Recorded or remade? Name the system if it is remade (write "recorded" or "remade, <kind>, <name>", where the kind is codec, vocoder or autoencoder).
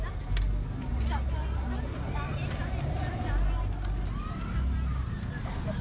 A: recorded